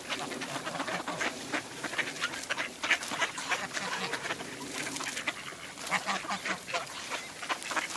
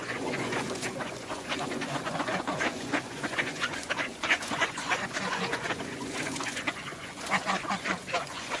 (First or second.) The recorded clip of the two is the first